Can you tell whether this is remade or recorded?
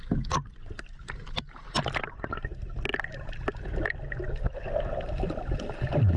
recorded